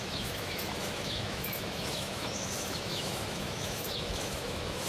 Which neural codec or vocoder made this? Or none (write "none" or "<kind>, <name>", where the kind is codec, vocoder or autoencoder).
autoencoder, DAC-VAE